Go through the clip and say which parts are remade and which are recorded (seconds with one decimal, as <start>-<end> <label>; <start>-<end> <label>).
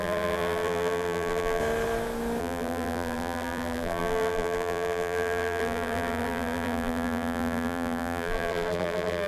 0.0-1.6 remade; 1.6-2.4 recorded; 2.4-9.3 remade